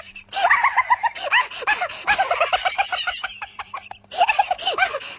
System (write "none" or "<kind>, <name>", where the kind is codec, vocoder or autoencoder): vocoder, BigVGAN v2